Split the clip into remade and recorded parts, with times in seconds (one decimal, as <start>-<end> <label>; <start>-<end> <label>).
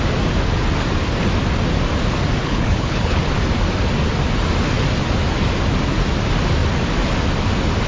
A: 0.0-2.4 recorded; 2.4-3.2 remade; 3.2-7.9 recorded